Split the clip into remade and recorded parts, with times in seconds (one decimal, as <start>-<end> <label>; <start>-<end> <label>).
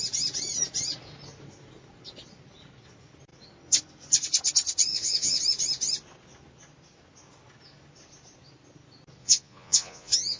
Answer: 0.0-4.9 recorded; 4.9-5.4 remade; 5.4-9.2 recorded; 9.2-10.4 remade